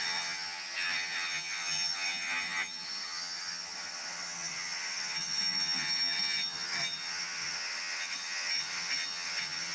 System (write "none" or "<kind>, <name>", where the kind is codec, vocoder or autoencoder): vocoder, HiFi-GAN